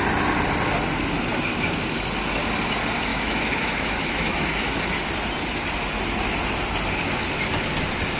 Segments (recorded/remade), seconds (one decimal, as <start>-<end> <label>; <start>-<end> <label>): 0.0-3.1 recorded; 3.1-4.8 remade; 4.8-8.2 recorded